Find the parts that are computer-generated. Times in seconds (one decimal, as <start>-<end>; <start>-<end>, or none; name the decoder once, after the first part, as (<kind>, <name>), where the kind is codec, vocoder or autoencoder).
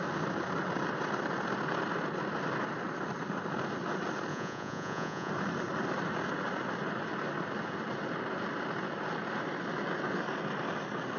4.3-5.3 (vocoder, Vocos)